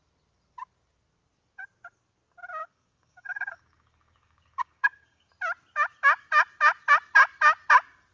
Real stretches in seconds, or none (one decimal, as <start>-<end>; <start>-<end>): 0.0-2.6; 5.3-8.1